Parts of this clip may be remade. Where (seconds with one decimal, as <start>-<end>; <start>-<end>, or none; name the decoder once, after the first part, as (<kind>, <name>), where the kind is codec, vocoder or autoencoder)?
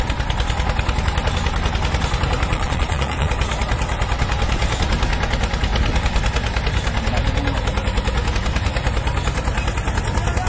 2.5-3.3 (vocoder, Vocos)